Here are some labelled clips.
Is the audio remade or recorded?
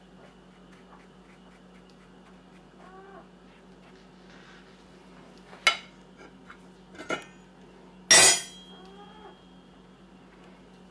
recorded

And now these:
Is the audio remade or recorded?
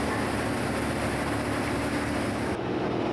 recorded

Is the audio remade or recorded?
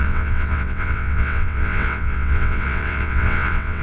remade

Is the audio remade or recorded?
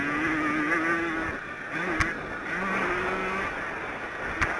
recorded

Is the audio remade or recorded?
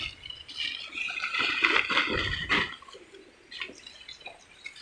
recorded